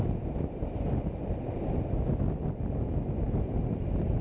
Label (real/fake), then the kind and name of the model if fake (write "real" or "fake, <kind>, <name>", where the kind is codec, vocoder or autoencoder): real